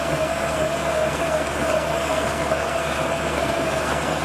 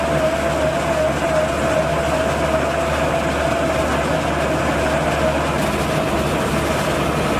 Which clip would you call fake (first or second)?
first